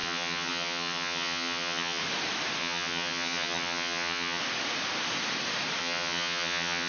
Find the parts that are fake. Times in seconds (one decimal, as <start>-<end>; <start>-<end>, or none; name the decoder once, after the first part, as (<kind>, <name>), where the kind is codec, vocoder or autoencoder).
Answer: 0.0-2.0 (vocoder, HiFi-GAN); 2.6-4.4; 5.8-6.9